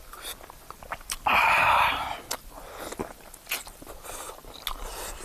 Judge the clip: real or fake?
real